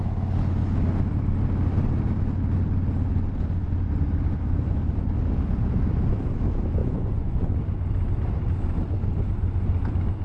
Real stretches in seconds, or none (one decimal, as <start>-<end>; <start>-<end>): 0.0-6.8; 7.5-10.2